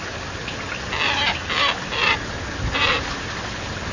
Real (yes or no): yes